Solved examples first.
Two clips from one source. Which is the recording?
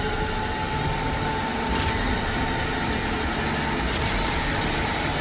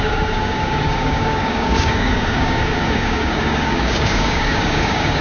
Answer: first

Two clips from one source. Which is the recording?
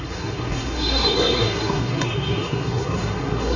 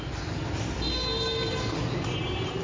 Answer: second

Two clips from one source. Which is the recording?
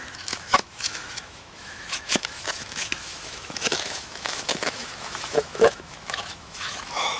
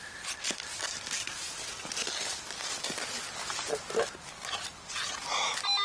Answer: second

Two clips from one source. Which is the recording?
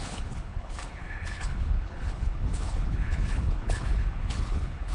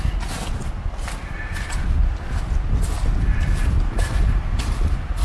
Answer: second